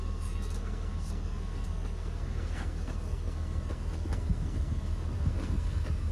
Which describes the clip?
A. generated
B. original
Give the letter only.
A